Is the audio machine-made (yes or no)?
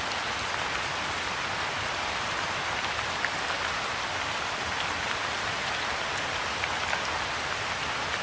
no